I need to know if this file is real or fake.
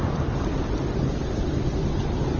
real